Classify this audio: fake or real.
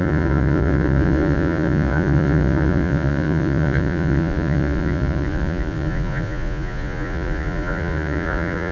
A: fake